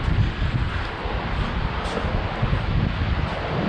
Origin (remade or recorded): recorded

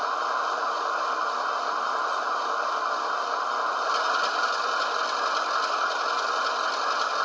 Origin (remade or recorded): recorded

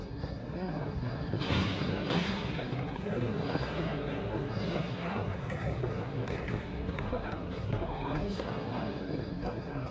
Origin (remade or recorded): remade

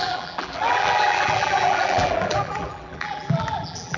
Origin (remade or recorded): remade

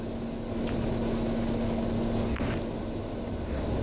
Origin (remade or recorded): recorded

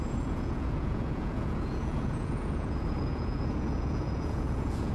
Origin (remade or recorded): remade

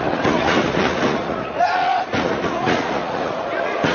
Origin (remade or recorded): remade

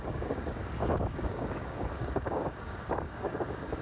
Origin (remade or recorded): remade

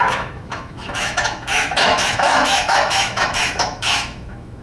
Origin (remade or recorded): remade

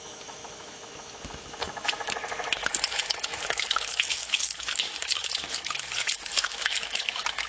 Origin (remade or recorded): remade